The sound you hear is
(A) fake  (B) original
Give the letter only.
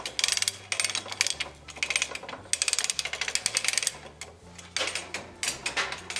B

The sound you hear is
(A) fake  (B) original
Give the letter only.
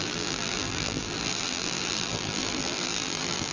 A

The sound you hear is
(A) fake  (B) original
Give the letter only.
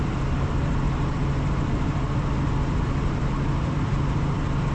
A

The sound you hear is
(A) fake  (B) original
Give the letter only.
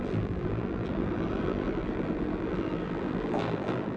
A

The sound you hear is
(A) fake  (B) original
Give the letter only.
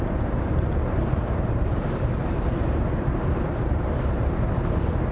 A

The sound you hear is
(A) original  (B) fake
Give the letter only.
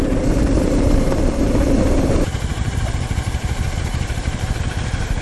B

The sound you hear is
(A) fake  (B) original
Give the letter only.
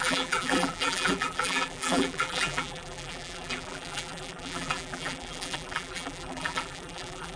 A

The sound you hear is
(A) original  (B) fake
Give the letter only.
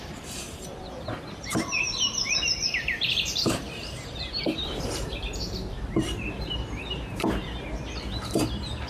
B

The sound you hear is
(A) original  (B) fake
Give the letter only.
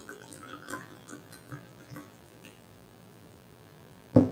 B